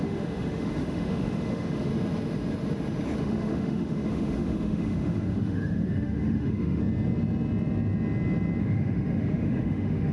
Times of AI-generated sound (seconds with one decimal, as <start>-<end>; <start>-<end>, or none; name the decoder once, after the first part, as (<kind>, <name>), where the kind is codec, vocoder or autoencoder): 0.0-1.9 (autoencoder, DAC-VAE); 3.2-6.8; 8.6-10.1